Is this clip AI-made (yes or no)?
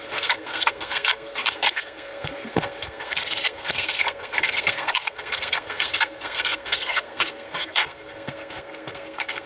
yes